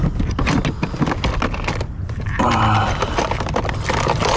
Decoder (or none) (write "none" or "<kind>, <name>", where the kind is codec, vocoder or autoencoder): none